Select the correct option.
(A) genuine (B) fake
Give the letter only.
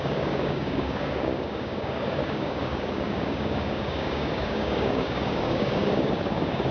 B